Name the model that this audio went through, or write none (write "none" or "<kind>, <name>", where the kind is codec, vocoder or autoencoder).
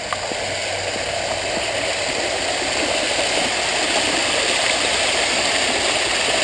none